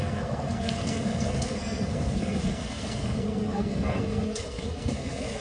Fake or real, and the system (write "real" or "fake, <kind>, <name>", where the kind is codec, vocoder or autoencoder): fake, codec, SNAC